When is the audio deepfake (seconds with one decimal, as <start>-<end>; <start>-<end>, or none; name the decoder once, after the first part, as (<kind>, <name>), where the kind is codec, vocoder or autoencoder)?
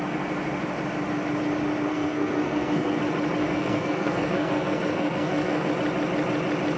1.9-3.0 (codec, SNAC); 3.4-5.7